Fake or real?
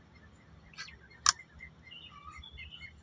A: real